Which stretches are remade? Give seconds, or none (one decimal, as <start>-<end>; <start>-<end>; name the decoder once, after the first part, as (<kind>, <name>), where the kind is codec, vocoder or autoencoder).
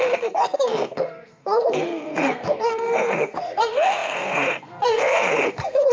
0.0-5.9 (codec, SNAC)